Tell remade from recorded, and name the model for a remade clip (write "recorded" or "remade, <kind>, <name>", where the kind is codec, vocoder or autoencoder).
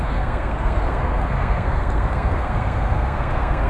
remade, codec, SNAC